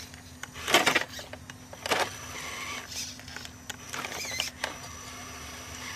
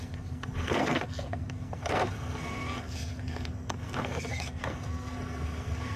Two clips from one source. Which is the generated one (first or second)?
second